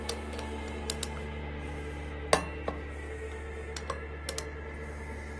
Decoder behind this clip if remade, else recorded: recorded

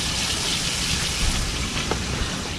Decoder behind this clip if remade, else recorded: recorded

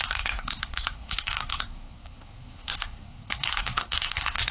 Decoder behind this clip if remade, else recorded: remade, codec, SNAC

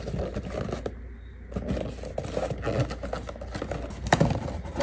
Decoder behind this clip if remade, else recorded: recorded